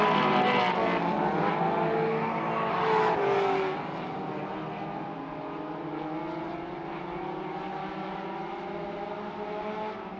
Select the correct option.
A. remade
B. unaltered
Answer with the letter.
B